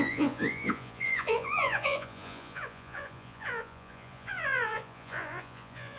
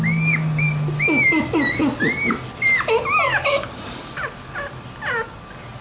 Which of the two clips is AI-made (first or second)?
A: first